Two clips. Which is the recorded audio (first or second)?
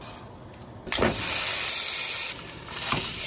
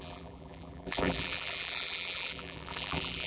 first